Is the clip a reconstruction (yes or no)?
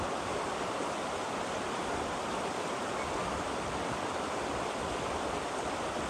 yes